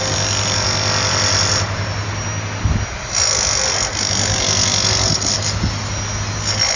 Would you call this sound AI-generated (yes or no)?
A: no